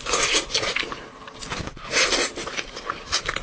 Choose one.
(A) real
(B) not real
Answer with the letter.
A